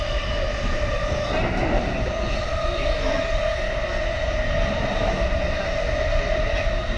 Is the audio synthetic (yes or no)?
no